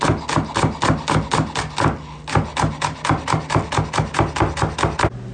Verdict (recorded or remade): recorded